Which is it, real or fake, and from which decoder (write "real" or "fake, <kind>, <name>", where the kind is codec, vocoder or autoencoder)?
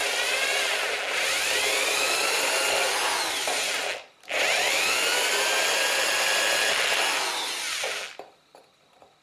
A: real